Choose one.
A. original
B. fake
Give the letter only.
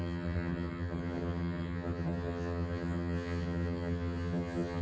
B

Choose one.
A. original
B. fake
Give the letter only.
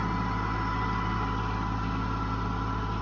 A